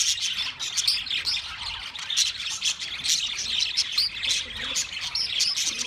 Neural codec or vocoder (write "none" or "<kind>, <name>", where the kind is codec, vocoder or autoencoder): none